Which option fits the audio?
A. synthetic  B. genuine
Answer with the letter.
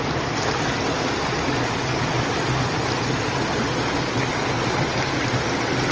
B